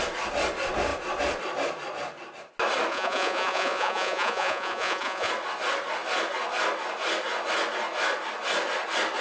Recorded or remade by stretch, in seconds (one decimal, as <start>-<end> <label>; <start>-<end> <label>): 0.0-2.9 recorded; 2.9-5.3 remade; 5.3-9.2 recorded